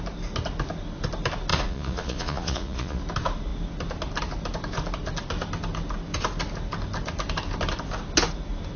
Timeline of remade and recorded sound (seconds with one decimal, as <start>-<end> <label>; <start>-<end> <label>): 0.0-1.5 recorded; 1.5-3.0 remade; 3.0-8.8 recorded